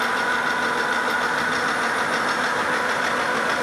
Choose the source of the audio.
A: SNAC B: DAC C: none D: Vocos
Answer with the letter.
C